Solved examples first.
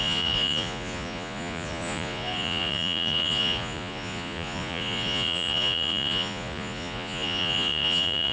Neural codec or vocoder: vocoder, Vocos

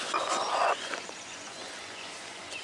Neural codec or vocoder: vocoder, Vocos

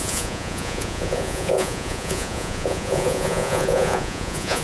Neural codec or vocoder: vocoder, Vocos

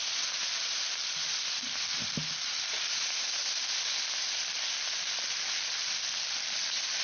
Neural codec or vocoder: none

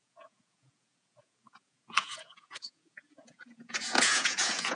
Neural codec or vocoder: vocoder, Vocos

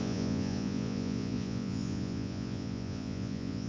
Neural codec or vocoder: vocoder, Vocos